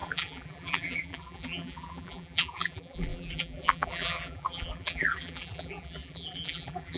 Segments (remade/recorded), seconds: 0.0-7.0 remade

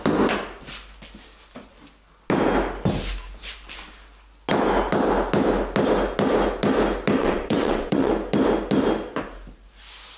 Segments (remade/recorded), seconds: 0.0-7.2 recorded; 7.2-8.1 remade; 8.1-10.2 recorded

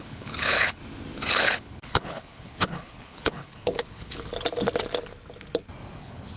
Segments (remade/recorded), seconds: 0.0-0.8 remade; 0.8-1.3 recorded; 1.3-4.3 remade; 4.3-6.0 recorded; 6.0-6.4 remade

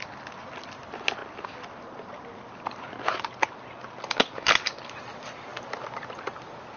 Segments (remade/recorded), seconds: 0.0-6.8 recorded

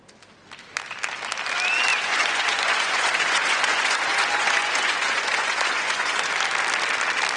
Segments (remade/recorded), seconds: 0.0-1.9 recorded; 1.9-6.3 remade; 6.3-7.4 recorded

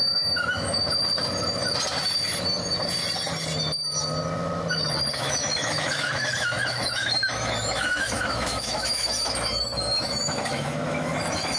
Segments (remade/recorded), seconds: 0.0-0.8 remade; 0.8-5.1 recorded; 5.1-11.6 remade